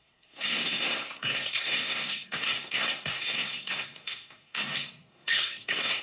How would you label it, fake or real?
fake